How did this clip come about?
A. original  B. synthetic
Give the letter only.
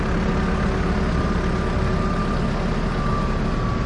A